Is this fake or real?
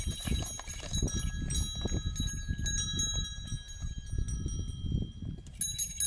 real